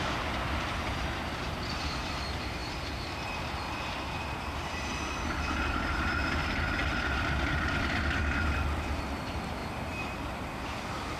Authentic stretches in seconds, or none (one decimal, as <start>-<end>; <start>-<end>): 0.0-6.8; 9.0-11.2